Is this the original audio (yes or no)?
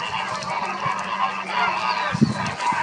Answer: yes